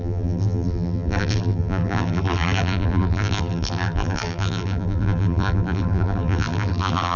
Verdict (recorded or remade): remade